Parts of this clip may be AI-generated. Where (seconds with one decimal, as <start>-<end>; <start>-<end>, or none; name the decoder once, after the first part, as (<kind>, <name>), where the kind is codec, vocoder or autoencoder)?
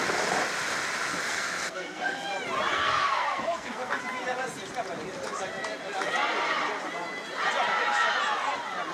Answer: 1.1-2.3 (codec, SNAC); 2.7-4.0